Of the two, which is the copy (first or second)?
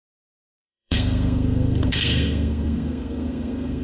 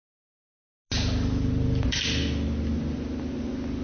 first